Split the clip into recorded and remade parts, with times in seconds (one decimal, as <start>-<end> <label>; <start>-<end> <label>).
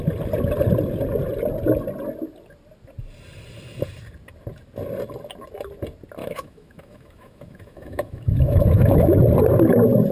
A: 0.0-6.2 recorded; 6.2-9.2 remade; 9.2-10.1 recorded